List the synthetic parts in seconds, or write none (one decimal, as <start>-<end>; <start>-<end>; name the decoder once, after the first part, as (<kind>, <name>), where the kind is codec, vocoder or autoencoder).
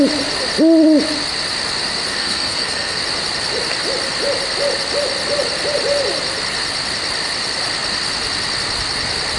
2.1-3.0 (codec, SNAC)